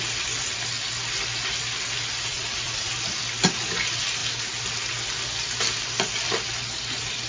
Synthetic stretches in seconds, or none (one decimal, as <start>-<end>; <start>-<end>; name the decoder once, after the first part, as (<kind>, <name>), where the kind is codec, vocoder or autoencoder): 2.3-2.9 (vocoder, Vocos)